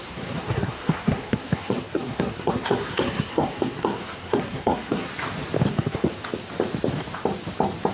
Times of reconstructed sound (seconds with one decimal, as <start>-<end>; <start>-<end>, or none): 0.0-5.1; 5.7-6.2